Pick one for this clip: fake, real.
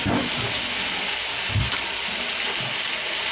real